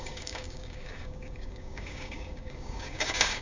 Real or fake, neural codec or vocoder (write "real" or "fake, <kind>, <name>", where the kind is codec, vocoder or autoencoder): fake, codec, DAC